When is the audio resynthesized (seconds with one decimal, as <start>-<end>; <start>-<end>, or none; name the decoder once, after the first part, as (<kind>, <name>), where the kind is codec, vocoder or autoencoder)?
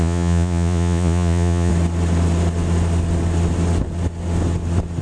0.0-1.7 (vocoder, Vocos)